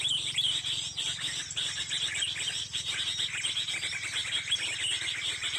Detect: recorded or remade recorded